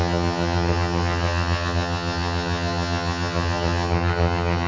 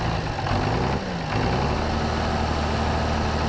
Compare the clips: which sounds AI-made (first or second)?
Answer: first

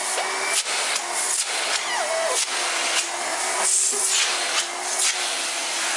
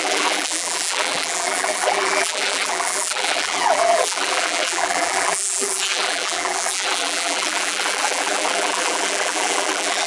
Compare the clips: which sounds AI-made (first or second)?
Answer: second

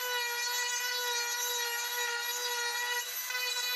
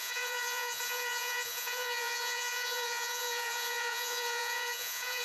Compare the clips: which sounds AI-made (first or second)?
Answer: second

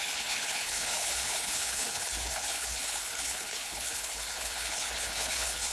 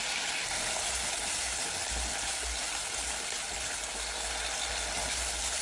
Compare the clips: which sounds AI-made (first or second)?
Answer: first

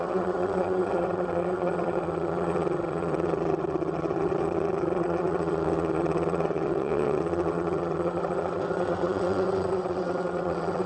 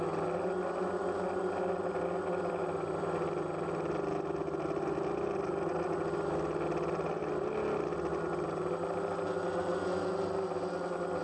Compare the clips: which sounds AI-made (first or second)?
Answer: first